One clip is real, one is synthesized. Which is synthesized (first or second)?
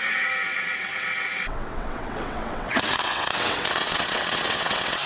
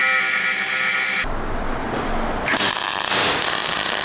first